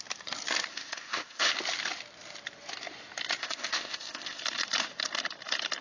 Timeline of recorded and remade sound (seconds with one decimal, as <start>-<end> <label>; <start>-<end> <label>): 0.0-0.7 recorded; 0.7-1.5 remade; 1.5-3.4 recorded; 3.4-4.4 remade; 4.4-5.8 recorded